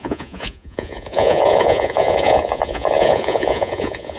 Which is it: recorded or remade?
remade